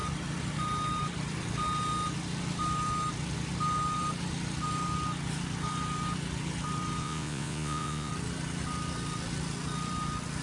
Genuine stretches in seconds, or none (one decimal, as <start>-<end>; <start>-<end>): 0.0-7.0; 8.1-10.4